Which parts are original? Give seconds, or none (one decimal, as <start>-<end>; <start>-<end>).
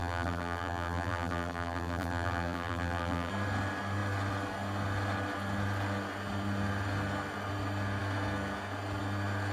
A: 3.3-9.5